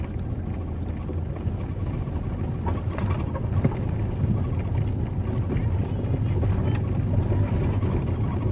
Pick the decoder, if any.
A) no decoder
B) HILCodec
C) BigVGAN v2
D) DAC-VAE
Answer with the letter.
A